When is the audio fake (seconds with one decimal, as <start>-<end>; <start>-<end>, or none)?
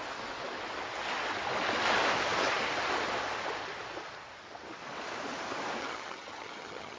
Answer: 5.8-7.0